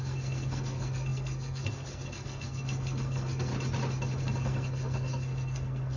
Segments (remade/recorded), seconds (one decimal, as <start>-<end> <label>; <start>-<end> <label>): 0.0-3.5 remade; 3.5-4.2 recorded; 4.2-6.0 remade